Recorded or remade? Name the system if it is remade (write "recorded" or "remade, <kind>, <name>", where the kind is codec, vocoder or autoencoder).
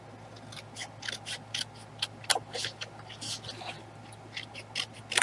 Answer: recorded